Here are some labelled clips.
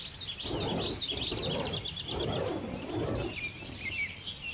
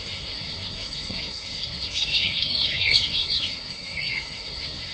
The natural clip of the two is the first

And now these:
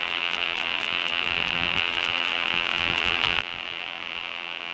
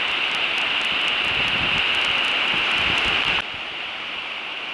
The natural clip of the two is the second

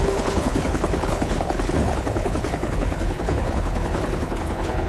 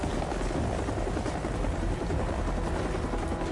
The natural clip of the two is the second